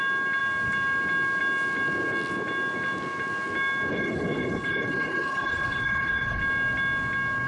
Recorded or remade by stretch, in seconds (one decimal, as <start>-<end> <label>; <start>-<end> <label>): 0.0-3.9 recorded; 3.9-6.4 remade; 6.4-7.5 recorded